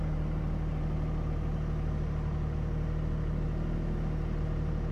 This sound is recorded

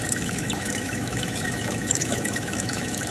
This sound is remade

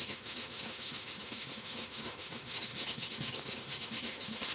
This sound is remade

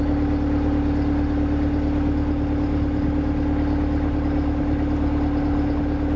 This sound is recorded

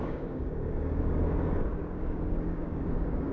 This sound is remade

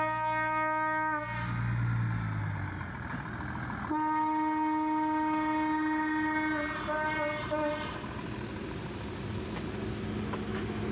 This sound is recorded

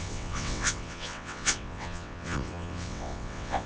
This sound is remade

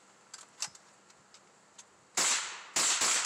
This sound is recorded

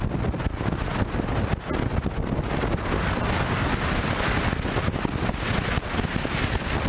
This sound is recorded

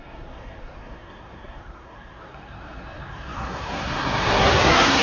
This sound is remade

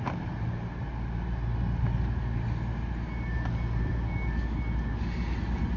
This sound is recorded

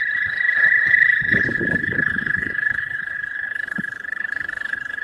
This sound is remade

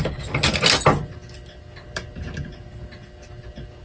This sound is recorded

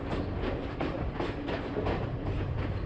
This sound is recorded